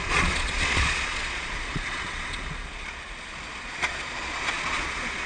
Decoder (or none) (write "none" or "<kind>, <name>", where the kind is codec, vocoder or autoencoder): vocoder, Vocos